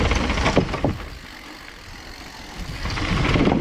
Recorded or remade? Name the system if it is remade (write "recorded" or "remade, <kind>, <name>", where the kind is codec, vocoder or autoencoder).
recorded